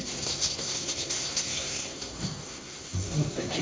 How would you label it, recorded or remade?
remade